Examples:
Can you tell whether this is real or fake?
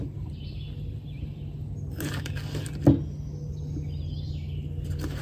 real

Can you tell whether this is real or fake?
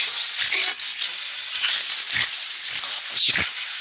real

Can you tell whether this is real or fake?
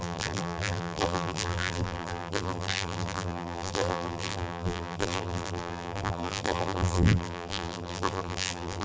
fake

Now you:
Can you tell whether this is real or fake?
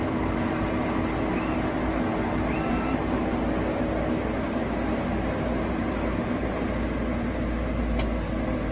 real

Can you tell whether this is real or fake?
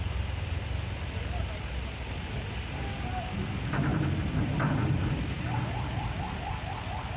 real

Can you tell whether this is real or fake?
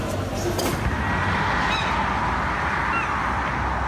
real